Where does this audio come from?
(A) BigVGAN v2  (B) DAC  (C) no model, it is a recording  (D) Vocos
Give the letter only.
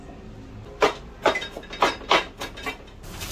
C